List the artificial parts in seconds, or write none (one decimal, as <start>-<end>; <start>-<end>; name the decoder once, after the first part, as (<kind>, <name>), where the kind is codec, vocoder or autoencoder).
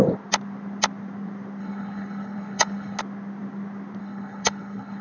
1.6-3.0 (codec, HILCodec); 4.0-5.0